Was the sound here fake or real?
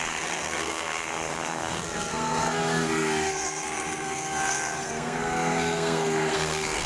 fake